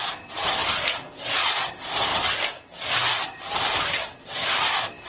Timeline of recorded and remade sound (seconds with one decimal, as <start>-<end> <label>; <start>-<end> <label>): 0.0-2.1 recorded; 2.1-3.8 remade; 3.8-5.1 recorded